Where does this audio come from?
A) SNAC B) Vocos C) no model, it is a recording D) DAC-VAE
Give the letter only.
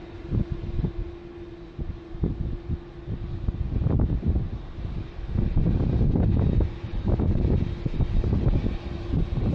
C